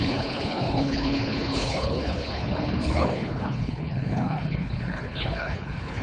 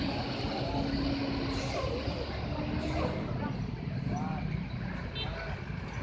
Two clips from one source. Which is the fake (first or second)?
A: first